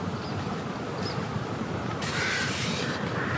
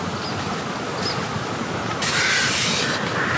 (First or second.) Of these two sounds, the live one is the second